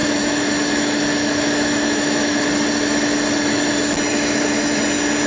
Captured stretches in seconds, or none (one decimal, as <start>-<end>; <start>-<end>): 2.4-4.1; 4.8-5.3